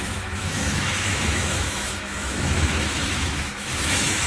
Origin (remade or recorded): remade